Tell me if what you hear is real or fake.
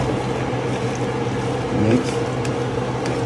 real